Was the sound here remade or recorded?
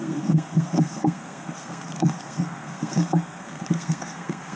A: remade